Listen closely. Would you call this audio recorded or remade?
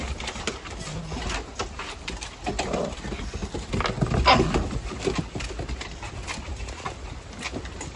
recorded